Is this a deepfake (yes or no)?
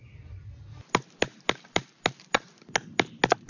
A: no